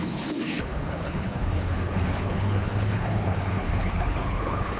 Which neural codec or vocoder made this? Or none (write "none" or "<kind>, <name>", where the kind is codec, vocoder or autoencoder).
codec, HILCodec